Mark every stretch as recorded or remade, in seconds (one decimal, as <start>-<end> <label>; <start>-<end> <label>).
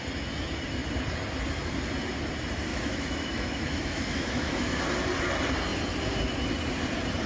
0.0-2.7 recorded; 2.7-4.8 remade; 4.8-7.3 recorded